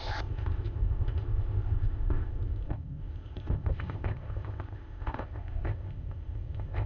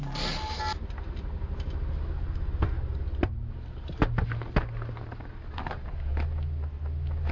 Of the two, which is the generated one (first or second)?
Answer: first